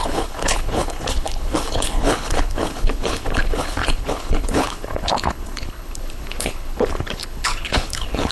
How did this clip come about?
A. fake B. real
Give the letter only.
A